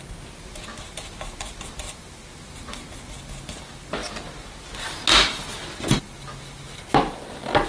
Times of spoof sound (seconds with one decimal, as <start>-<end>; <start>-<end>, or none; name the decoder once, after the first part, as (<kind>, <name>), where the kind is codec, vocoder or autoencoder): none